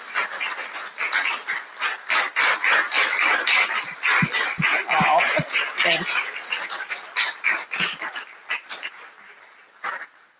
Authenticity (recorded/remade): remade